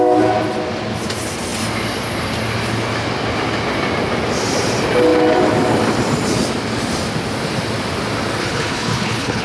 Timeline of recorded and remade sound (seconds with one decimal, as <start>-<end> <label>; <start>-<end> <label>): 0.0-8.4 recorded; 8.4-9.4 remade